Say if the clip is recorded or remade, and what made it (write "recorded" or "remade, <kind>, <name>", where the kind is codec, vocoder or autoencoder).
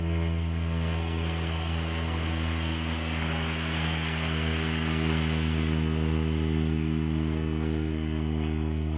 remade, codec, SNAC